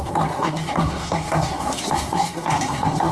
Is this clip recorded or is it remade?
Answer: remade